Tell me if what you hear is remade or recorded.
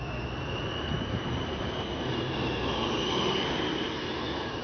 remade